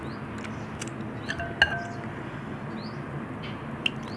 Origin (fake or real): real